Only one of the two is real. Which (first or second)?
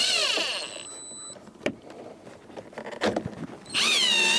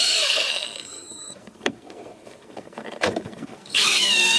first